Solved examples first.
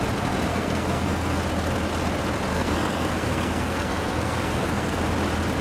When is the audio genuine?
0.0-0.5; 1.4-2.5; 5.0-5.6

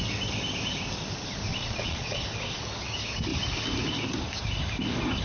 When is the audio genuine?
0.0-1.5; 2.2-5.2

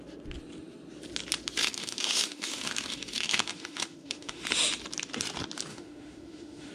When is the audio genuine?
0.0-1.6; 4.4-5.7

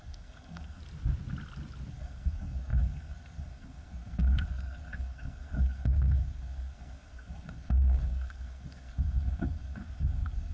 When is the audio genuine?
0.8-1.9

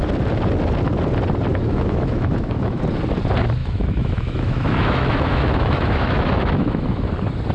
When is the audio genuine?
0.0-1.5; 2.8-3.6; 7.1-7.5